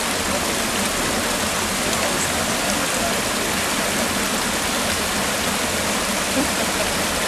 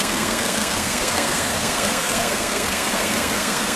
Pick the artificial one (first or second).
second